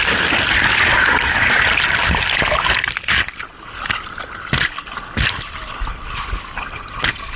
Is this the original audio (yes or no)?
yes